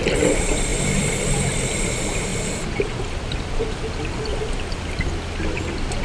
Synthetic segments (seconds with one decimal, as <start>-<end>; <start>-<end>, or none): 0.7-1.2; 2.3-3.7